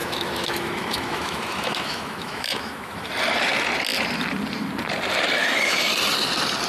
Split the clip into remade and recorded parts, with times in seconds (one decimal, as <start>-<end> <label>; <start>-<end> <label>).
0.0-3.1 remade; 3.1-5.4 recorded; 5.4-5.9 remade; 5.9-6.7 recorded